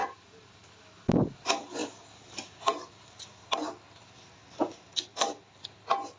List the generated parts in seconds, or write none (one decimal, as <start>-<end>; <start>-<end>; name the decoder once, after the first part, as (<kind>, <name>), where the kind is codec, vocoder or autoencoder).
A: 0.0-0.7 (vocoder, BigVGAN v2); 1.8-3.2